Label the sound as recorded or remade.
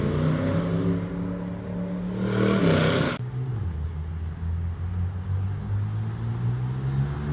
recorded